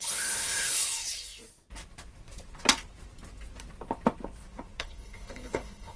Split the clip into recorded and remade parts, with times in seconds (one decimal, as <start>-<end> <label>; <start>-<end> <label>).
0.0-1.4 remade; 1.4-4.8 recorded; 4.8-6.0 remade